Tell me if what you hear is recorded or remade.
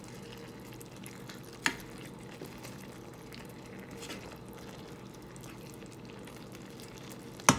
recorded